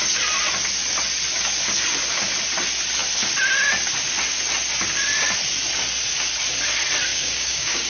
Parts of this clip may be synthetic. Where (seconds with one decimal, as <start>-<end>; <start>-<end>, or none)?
7.1-7.9